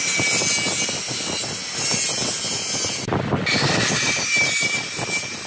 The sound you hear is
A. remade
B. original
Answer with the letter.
B